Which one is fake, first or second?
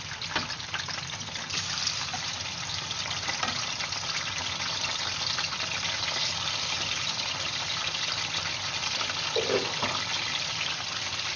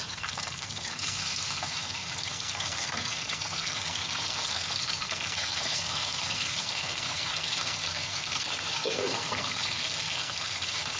second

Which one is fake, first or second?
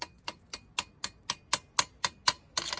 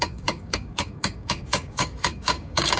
second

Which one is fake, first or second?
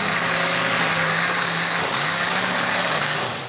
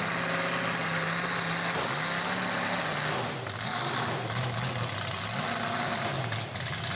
first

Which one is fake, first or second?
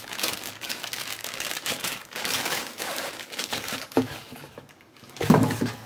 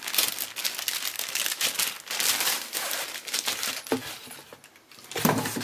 first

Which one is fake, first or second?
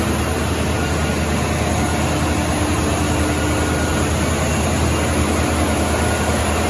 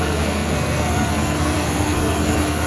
second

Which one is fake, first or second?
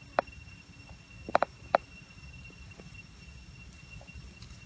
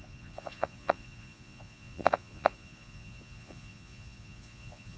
second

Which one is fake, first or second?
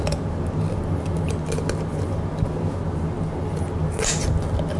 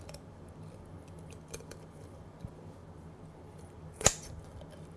second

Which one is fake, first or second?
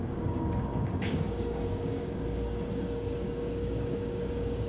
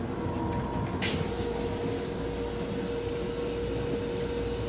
first